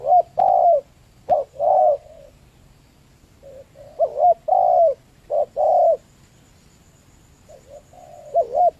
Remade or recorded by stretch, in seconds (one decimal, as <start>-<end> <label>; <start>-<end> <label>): 0.0-1.5 recorded; 1.5-2.2 remade; 2.2-8.8 recorded